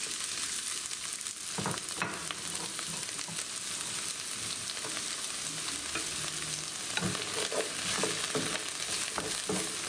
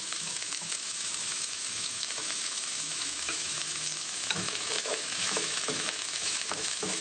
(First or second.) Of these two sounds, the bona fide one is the first